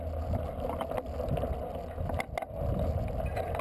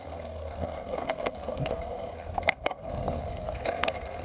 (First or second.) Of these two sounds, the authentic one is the first